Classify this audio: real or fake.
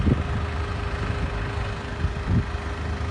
real